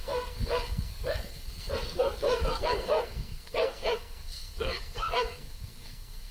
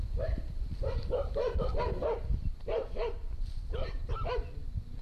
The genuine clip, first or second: second